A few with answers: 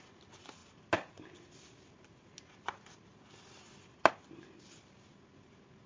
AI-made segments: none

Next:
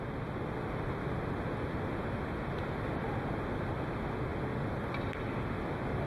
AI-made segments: none

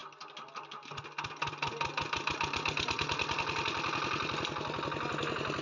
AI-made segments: none

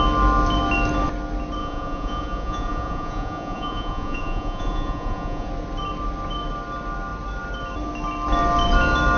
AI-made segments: 1.6-5.5 (vocoder, Vocos)